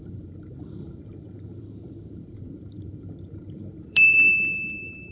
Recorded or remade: remade